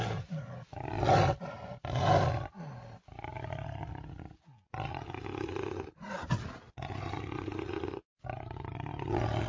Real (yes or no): yes